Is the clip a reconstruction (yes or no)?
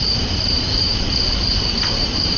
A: yes